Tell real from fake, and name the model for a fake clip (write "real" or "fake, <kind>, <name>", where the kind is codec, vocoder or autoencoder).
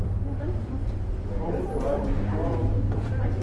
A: fake, vocoder, BigVGAN v2